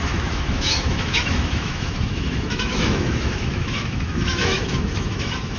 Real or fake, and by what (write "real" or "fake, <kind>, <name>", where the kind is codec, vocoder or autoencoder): fake, autoencoder, DAC-VAE